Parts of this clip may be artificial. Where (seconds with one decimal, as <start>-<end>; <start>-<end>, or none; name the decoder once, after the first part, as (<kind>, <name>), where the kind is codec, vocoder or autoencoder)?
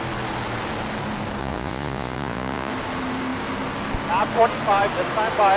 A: 1.4-2.7 (vocoder, Vocos)